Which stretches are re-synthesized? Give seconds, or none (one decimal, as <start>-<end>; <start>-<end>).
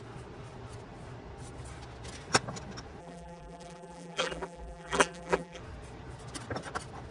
3.0-5.6